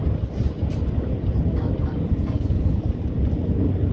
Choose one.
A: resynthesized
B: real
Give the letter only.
B